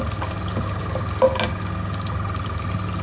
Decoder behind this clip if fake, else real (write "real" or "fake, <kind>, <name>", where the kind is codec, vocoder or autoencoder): real